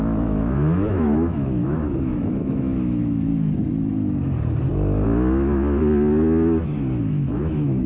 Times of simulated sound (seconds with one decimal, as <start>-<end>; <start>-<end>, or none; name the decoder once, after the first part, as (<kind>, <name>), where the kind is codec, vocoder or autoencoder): 0.0-3.3 (autoencoder, DAC-VAE); 7.0-7.9